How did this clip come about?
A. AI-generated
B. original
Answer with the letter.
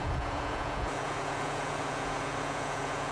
A